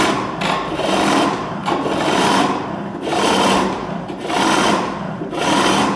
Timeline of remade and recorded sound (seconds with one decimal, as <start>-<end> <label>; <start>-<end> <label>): 0.0-1.6 recorded; 1.6-5.2 remade; 5.2-6.0 recorded